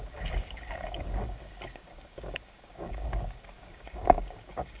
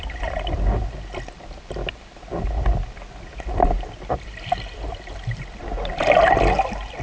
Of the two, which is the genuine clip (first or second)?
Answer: second